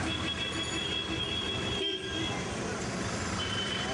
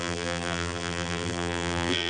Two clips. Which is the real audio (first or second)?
first